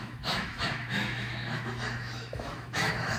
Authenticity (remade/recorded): remade